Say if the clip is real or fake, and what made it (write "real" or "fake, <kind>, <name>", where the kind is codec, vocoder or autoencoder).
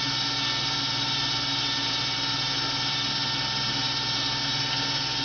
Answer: real